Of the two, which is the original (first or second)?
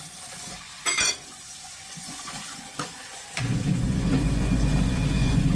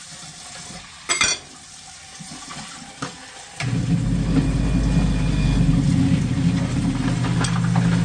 second